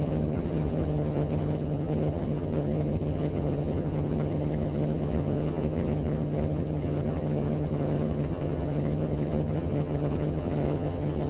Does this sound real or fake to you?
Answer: fake